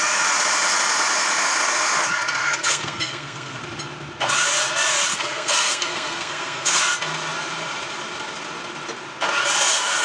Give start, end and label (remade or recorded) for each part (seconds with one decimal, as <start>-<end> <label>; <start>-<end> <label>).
0.0-2.4 recorded; 2.4-3.6 remade; 3.6-5.1 recorded; 5.1-6.8 remade; 6.8-10.0 recorded